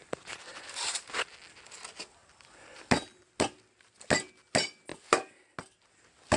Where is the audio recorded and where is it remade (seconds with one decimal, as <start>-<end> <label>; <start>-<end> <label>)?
0.0-6.4 recorded